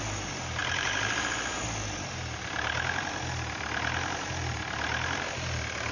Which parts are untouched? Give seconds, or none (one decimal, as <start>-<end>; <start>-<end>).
0.0-0.6; 1.6-5.9